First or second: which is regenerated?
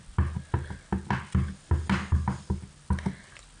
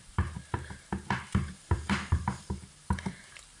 second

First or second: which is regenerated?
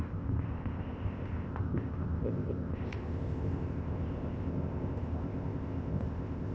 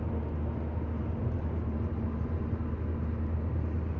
first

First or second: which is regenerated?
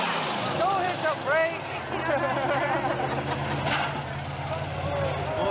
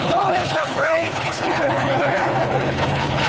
second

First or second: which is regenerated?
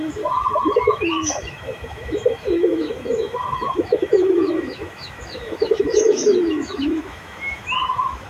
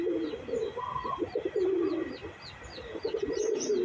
first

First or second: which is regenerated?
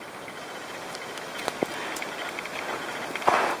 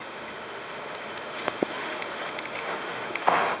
second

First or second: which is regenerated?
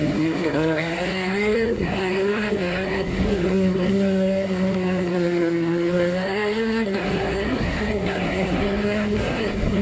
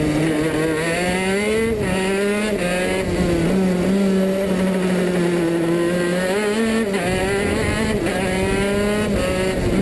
first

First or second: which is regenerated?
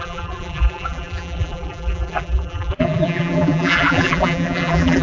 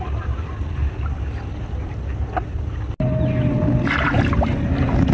first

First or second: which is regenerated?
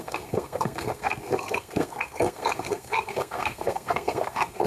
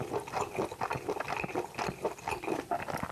first